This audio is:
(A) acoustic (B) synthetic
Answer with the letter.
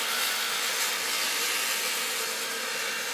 A